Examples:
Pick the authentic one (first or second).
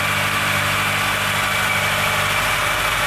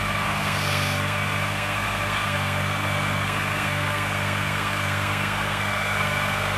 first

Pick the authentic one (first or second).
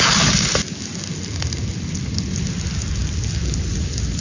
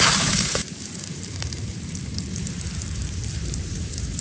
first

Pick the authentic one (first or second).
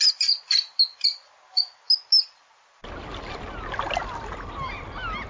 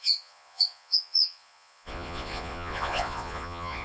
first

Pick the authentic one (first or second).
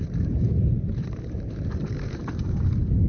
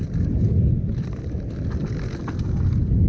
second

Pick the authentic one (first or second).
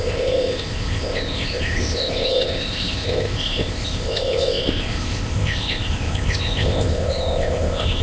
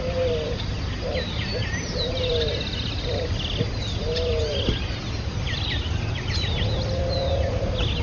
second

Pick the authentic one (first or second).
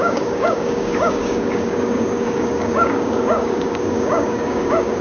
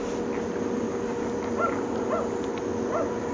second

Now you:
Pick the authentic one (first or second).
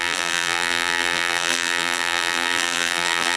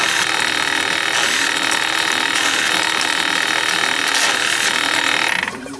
second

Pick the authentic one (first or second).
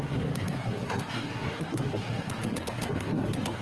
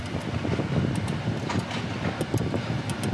second